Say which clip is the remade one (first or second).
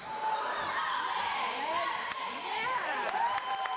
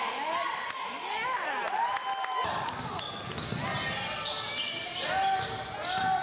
first